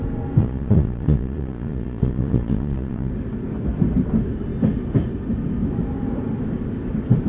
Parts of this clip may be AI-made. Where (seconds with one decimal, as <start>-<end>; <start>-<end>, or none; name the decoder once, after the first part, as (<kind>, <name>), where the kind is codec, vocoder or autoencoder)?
0.4-3.1 (vocoder, Vocos)